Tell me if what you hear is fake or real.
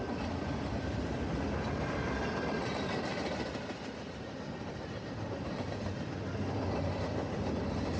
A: real